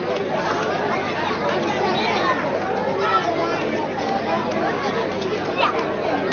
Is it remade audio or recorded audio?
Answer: recorded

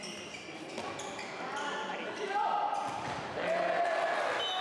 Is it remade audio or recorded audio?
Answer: recorded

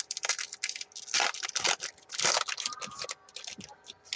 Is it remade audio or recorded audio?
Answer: recorded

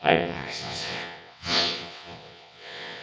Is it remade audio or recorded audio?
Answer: remade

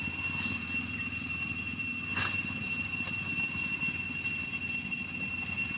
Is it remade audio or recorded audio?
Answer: recorded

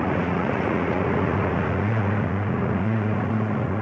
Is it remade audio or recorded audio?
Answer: remade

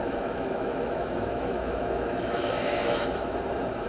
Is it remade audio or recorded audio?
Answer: remade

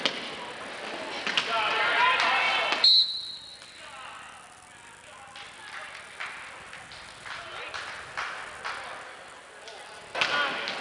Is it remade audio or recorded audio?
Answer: recorded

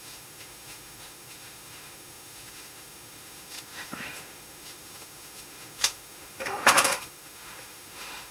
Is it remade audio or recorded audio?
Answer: remade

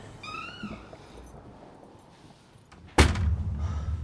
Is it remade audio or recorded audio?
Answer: recorded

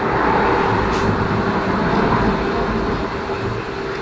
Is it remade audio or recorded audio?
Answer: recorded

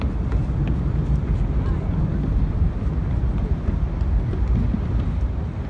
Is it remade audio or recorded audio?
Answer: recorded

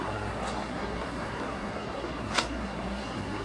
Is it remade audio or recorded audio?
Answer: remade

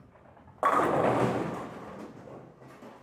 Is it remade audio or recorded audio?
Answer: recorded